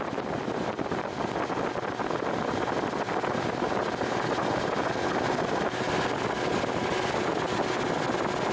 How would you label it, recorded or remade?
recorded